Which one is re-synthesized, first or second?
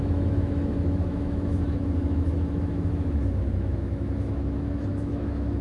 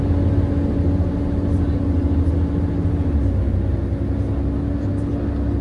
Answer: first